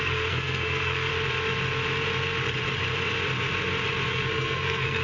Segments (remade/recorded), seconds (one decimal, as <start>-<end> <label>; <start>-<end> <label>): 0.0-1.1 remade; 1.1-4.1 recorded; 4.1-5.0 remade